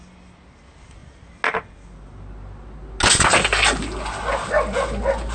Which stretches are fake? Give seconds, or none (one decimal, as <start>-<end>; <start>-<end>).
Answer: none